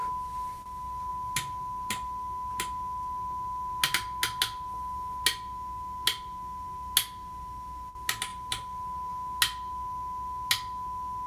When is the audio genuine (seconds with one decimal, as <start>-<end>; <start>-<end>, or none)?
0.0-11.3